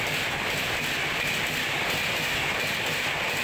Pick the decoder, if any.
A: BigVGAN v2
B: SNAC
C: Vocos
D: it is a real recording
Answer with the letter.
D